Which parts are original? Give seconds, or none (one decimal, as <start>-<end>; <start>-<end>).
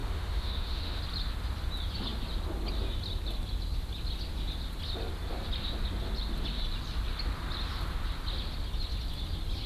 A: 1.0-9.7